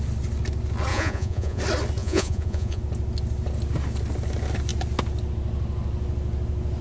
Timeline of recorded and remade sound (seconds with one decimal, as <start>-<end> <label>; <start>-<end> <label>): 0.0-0.9 recorded; 0.9-1.6 remade; 1.6-2.0 recorded; 2.0-2.8 remade; 2.8-6.8 recorded